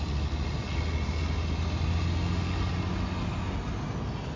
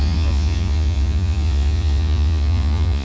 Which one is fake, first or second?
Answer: second